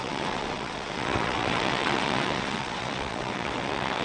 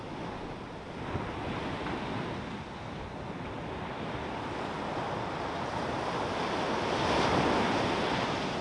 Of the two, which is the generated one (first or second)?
first